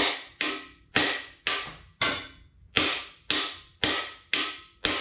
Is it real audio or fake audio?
real